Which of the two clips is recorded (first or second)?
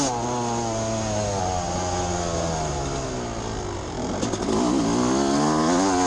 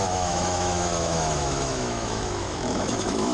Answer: first